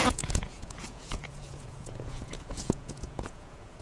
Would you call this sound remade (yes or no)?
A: yes